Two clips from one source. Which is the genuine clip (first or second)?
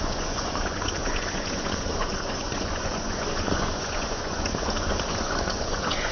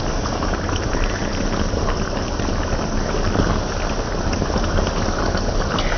second